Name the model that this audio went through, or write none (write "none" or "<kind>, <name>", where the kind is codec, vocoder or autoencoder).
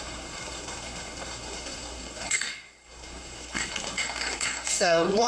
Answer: codec, SNAC